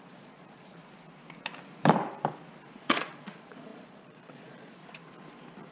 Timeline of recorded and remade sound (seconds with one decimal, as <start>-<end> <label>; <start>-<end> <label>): 0.0-0.8 remade; 0.8-2.8 recorded; 2.8-4.8 remade; 4.8-5.7 recorded